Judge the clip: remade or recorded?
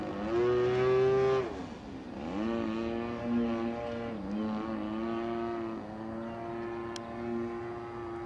recorded